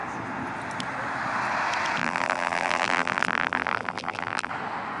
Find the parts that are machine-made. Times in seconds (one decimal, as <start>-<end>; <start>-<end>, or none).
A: 2.0-4.5